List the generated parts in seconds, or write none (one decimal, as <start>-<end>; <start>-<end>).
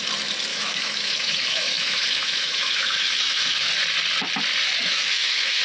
0.5-3.7; 4.8-5.6